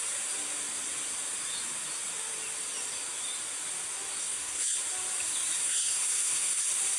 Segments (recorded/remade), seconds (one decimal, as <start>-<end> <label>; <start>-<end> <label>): 0.0-4.2 recorded; 4.2-4.8 remade; 4.8-5.6 recorded; 5.6-6.6 remade; 6.6-7.0 recorded